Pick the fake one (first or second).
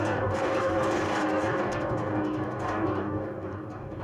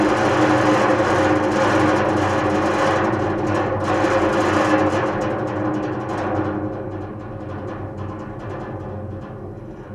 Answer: first